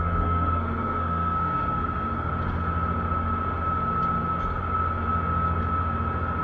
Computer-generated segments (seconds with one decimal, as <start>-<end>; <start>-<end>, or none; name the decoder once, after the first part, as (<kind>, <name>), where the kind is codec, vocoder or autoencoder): 0.0-2.3 (codec, SNAC)